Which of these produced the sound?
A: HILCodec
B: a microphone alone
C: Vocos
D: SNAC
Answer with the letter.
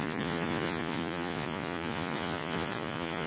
C